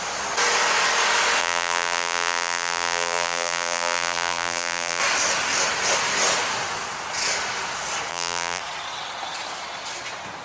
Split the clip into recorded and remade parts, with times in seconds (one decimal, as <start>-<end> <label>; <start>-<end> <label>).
0.0-1.4 recorded; 1.4-5.0 remade; 5.0-8.1 recorded; 8.1-8.6 remade; 8.6-10.4 recorded